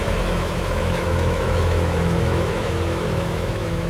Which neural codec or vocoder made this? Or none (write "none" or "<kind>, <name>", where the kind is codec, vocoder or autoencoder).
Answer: autoencoder, DAC-VAE